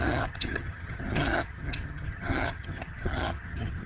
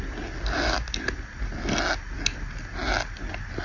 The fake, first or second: first